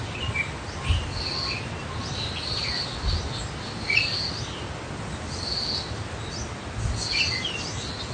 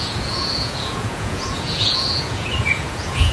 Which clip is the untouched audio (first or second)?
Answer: first